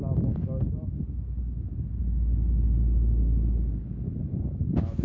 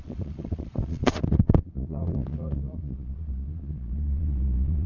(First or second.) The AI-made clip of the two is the second